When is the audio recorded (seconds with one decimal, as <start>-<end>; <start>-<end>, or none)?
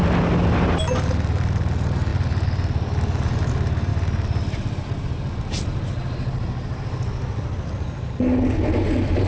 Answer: 0.0-9.3